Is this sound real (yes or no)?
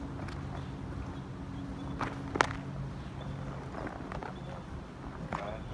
yes